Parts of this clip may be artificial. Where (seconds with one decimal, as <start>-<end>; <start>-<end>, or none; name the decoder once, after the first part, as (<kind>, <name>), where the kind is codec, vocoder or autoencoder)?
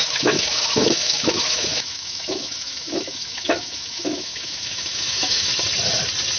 0.0-5.5 (autoencoder, DAC-VAE)